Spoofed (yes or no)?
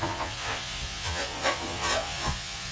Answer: yes